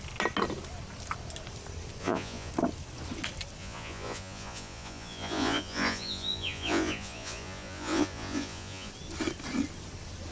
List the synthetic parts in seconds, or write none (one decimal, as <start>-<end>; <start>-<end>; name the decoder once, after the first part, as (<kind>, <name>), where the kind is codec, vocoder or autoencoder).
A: 2.0-2.5 (vocoder, Vocos); 3.6-8.9